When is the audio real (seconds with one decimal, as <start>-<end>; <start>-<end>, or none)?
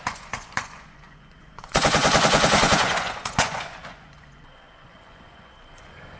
none